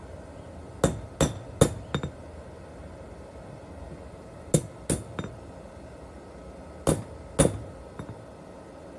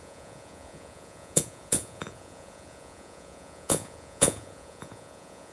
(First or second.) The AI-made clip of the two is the second